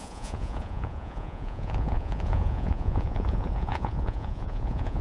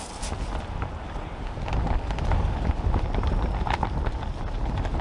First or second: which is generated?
first